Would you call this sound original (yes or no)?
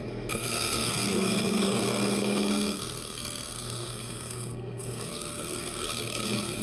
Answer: no